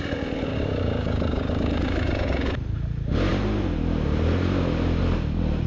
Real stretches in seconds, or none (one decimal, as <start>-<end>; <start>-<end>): 0.0-0.5; 2.5-5.7

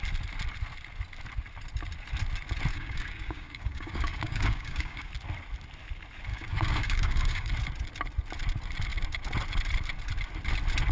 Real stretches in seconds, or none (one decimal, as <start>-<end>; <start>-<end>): 0.0-2.7; 5.1-6.3; 7.5-10.9

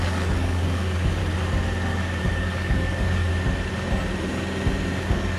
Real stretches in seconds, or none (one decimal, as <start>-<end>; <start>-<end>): 1.2-2.2; 3.3-5.0

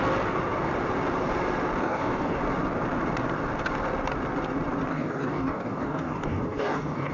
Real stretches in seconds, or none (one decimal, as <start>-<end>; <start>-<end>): 0.0-1.8; 2.4-4.9

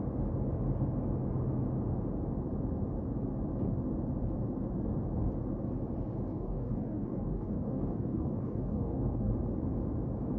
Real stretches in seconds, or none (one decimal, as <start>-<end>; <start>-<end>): 0.0-6.3; 9.3-10.4